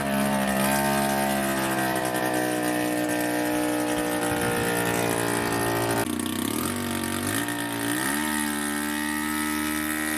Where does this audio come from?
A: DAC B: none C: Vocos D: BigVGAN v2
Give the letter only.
B